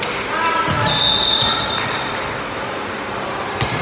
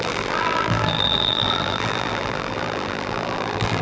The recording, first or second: first